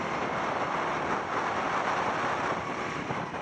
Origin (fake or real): real